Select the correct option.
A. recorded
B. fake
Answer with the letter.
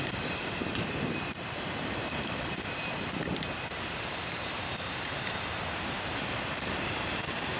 B